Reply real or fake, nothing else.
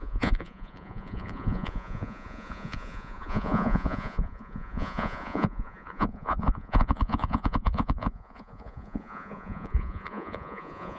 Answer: fake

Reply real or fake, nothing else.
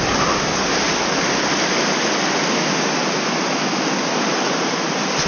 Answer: real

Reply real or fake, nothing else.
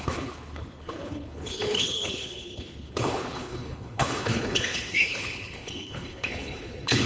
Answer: fake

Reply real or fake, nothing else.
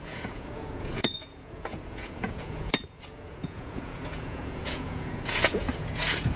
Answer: fake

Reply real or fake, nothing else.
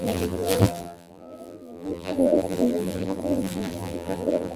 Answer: fake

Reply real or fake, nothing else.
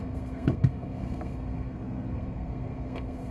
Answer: fake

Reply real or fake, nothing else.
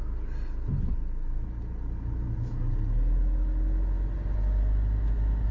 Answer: real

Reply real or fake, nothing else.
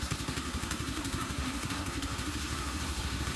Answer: fake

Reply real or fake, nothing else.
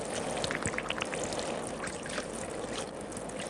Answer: real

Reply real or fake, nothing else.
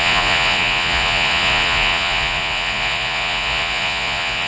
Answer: fake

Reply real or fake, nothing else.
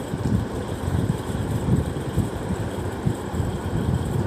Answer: fake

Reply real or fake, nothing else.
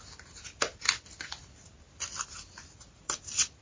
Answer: real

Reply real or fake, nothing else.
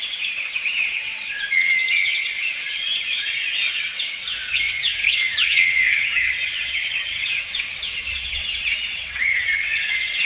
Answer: fake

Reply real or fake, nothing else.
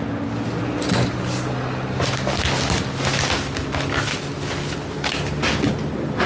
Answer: real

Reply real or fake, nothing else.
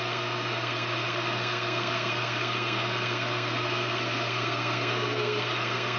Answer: fake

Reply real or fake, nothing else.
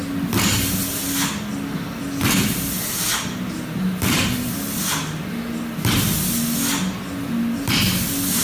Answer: real